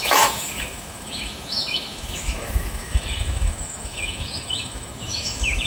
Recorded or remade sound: remade